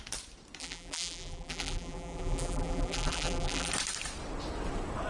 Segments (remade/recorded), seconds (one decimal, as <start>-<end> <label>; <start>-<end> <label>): 0.0-0.6 recorded; 0.6-3.7 remade; 3.7-5.1 recorded